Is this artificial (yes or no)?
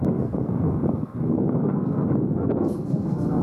yes